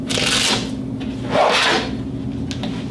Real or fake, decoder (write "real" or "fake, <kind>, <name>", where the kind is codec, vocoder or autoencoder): real